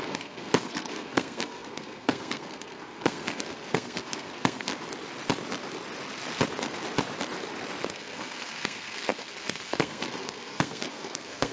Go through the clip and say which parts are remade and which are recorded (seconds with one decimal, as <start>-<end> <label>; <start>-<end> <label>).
0.0-4.7 remade; 4.7-7.9 recorded; 7.9-11.5 remade